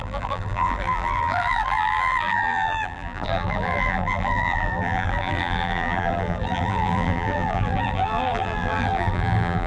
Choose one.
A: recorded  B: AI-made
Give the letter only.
B